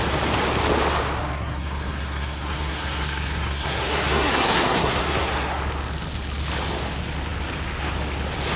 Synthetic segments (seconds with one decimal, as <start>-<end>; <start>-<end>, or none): 1.2-5.6